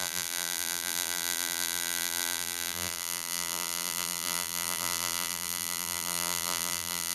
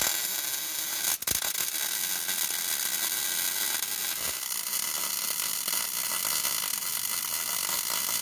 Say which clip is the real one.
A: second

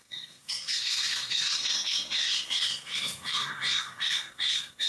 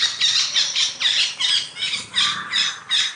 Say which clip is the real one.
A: second